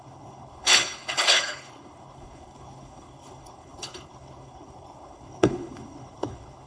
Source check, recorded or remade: remade